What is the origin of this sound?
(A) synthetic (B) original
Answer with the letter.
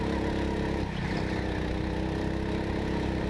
B